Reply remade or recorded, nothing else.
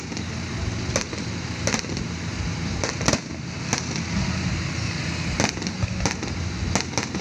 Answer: recorded